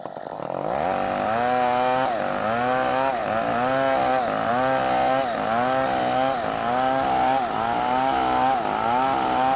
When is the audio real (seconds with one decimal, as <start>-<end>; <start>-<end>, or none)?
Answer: 0.0-9.6